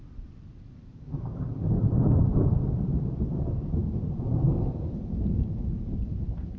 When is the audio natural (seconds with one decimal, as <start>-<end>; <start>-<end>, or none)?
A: 0.0-0.9; 1.5-6.6

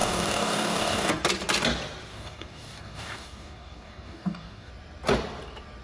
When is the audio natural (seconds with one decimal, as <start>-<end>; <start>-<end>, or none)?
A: 1.1-2.1; 4.7-5.8

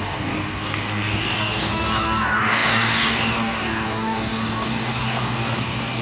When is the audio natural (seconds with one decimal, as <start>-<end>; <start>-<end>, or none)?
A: none

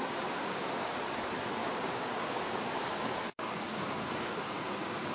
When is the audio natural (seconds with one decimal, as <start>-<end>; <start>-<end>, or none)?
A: 0.0-0.4; 1.2-1.6